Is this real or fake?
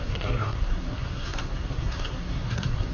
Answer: fake